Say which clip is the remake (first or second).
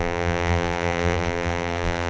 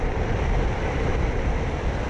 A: first